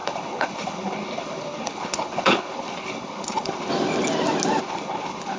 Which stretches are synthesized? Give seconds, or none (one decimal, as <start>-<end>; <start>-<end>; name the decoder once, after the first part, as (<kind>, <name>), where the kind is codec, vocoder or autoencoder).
0.0-3.7 (codec, HILCodec); 4.6-5.4